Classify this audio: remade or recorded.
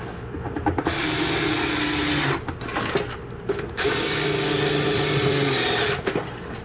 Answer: recorded